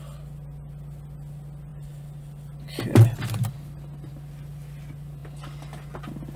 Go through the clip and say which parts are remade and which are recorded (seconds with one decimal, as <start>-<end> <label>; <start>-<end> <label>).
0.0-6.4 recorded